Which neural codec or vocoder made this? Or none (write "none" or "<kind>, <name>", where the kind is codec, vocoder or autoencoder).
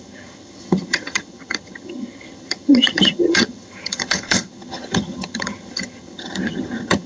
vocoder, HiFi-GAN